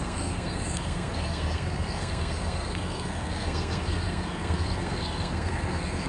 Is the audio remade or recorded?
remade